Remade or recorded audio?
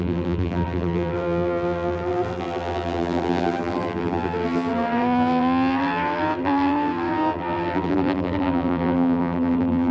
remade